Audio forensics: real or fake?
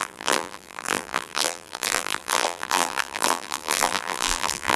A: fake